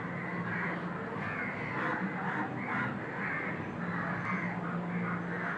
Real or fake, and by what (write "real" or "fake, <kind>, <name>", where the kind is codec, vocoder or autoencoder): real